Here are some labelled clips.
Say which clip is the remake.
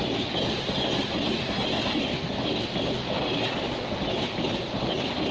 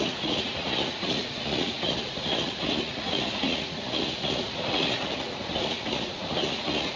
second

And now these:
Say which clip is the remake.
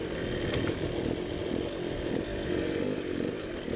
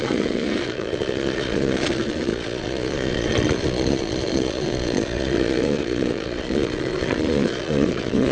second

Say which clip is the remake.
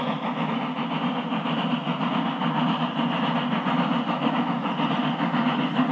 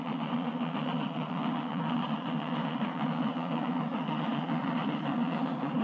second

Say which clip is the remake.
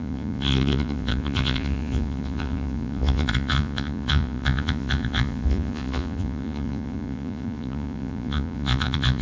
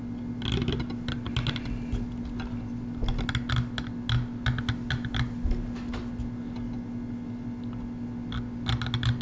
first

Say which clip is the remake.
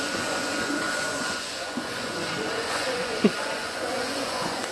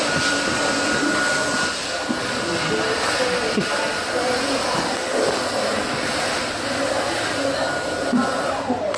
first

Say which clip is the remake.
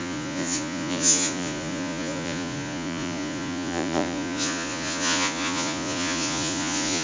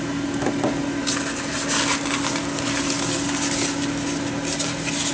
first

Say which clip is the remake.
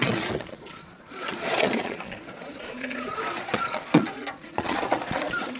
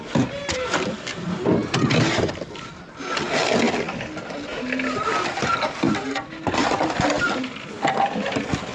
first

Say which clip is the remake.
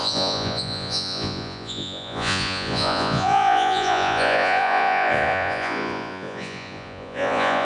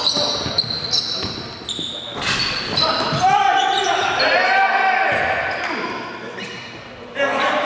first